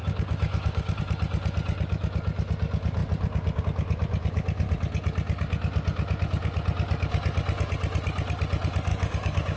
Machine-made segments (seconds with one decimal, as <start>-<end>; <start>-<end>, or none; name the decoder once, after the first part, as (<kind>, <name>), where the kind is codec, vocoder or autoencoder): 0.0-1.0 (codec, DAC); 8.9-9.6